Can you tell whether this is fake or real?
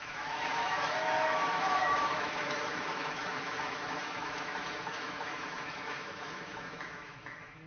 fake